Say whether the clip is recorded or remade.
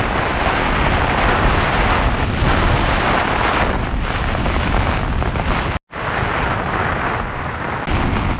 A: recorded